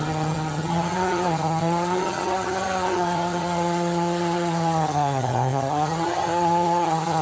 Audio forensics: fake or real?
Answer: fake